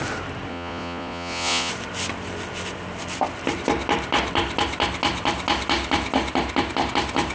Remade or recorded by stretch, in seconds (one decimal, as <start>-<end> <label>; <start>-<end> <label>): 0.0-0.5 recorded; 0.5-1.7 remade; 1.7-7.3 recorded